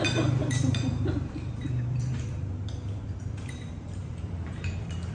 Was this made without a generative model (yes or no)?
no